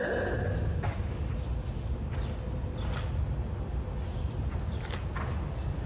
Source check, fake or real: real